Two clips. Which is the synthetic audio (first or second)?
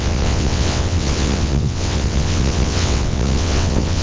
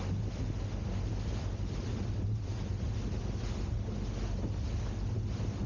first